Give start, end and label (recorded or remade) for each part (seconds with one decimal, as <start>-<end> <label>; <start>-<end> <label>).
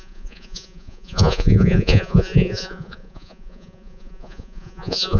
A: 0.0-5.2 remade